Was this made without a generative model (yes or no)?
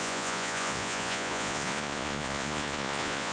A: no